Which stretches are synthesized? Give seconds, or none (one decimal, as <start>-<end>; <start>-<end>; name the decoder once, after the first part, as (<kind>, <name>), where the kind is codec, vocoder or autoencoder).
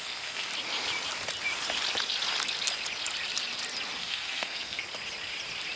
0.0-0.5 (codec, SNAC); 4.0-4.8